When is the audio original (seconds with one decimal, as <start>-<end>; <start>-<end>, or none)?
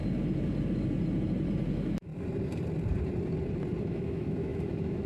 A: 0.0-1.7; 2.1-3.8